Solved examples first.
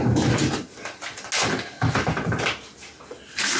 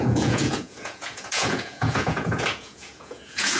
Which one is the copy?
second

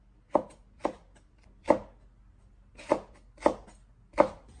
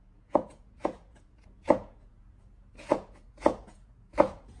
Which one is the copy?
second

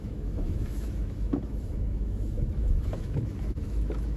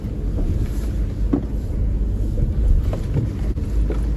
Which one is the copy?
first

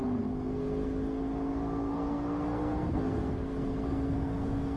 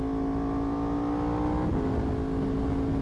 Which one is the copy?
first